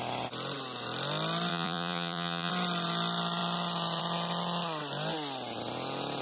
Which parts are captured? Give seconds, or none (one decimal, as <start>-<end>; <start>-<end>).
0.0-1.5; 2.5-6.2